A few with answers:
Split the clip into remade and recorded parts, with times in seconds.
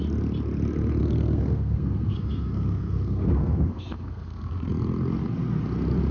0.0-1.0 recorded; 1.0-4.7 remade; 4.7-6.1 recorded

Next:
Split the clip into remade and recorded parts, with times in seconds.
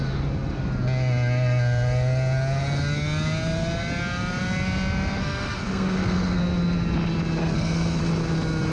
0.0-5.2 recorded; 5.2-6.4 remade; 6.4-7.4 recorded; 7.4-8.0 remade; 8.0-8.7 recorded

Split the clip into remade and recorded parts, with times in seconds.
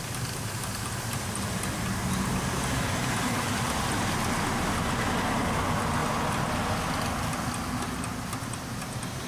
0.0-9.3 recorded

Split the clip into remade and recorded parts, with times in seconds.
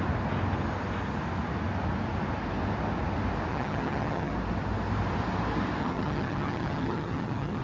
0.0-3.5 recorded; 3.5-4.3 remade; 4.3-5.8 recorded; 5.8-7.6 remade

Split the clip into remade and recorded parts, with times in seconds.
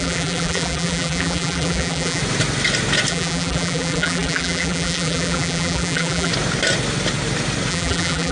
0.0-2.2 remade; 2.2-3.1 recorded; 3.1-6.3 remade; 6.3-7.7 recorded; 7.7-8.3 remade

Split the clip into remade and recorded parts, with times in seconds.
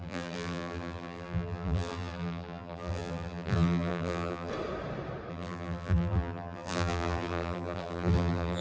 0.0-4.5 remade; 4.5-5.3 recorded; 5.3-8.6 remade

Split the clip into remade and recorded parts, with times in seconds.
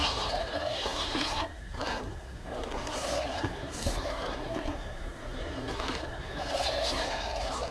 0.0-7.7 remade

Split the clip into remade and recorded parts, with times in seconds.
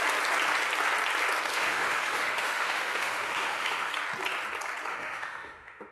0.0-1.5 recorded; 1.5-3.9 remade; 3.9-4.9 recorded; 4.9-5.9 remade